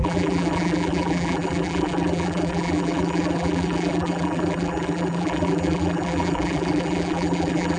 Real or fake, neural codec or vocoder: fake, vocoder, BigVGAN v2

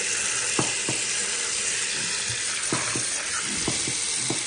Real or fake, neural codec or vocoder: real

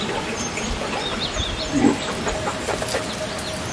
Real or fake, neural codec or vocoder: real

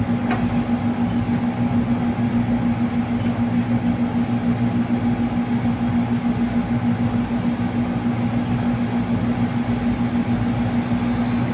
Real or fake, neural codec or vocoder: real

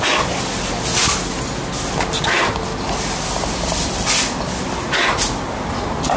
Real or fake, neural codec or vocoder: real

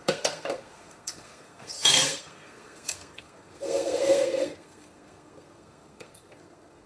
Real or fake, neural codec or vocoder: fake, codec, SNAC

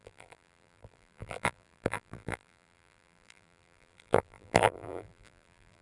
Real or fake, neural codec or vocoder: fake, vocoder, BigVGAN v2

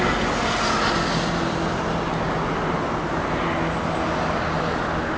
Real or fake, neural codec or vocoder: real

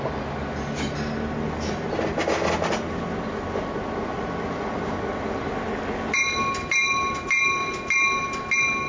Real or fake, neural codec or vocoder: real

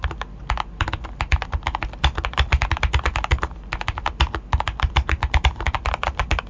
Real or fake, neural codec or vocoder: real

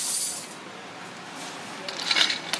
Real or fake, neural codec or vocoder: real